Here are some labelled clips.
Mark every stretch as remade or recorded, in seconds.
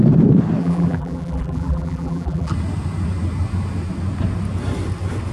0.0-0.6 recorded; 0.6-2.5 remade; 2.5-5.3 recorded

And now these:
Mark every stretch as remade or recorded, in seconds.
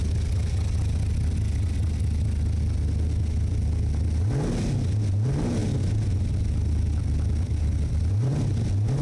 0.0-5.6 recorded; 5.6-8.4 remade; 8.4-9.0 recorded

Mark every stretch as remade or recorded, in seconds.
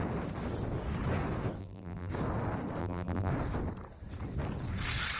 0.0-1.6 recorded; 1.6-2.1 remade; 2.1-2.8 recorded; 2.8-3.3 remade; 3.3-5.2 recorded